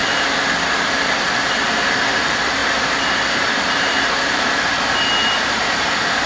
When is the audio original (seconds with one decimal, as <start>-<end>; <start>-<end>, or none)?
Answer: 0.0-2.6

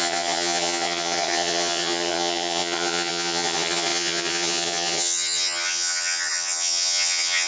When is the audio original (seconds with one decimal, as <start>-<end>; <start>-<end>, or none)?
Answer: none

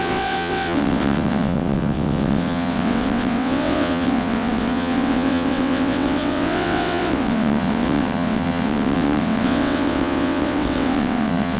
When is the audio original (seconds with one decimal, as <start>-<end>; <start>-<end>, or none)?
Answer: none

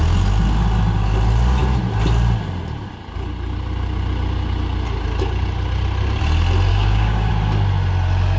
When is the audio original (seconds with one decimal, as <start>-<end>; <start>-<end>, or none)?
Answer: 0.0-6.7; 7.3-8.4

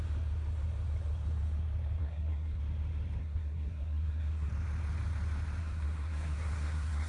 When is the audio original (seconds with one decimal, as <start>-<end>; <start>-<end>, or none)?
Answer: 0.0-2.0; 2.6-3.2; 4.5-5.6

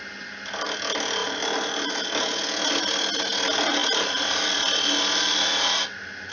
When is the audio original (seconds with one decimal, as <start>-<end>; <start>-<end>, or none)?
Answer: 0.0-1.2; 2.0-3.8; 4.4-6.3

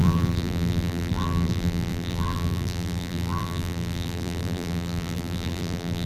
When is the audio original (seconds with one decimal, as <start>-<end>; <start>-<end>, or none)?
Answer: none